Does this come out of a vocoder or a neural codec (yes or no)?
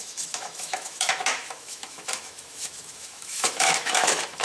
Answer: yes